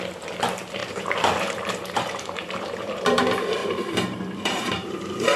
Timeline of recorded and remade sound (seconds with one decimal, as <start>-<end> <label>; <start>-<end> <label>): 0.0-0.8 recorded; 0.8-3.2 remade; 3.2-3.6 recorded; 3.6-5.0 remade; 5.0-5.4 recorded